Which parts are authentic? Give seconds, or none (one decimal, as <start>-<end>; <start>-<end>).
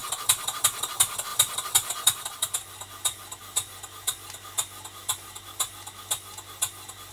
0.0-1.3; 1.9-7.1